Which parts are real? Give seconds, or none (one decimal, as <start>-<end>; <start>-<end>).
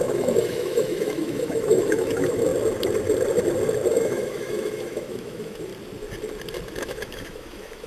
2.5-3.9; 5.7-6.8